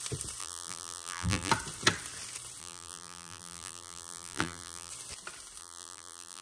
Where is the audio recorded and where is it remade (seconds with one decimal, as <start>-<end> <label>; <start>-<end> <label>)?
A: 0.0-0.4 recorded; 0.4-1.5 remade; 1.5-2.6 recorded; 2.6-4.9 remade; 4.9-5.6 recorded; 5.6-6.4 remade